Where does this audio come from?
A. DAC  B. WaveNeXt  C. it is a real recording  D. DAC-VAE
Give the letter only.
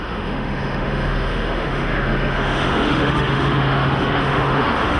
D